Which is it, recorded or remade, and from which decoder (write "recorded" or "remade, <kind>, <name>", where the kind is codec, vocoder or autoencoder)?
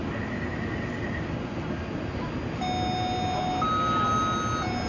recorded